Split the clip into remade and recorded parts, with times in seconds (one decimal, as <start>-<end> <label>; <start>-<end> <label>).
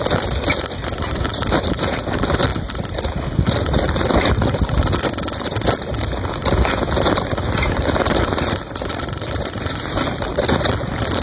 0.0-11.2 recorded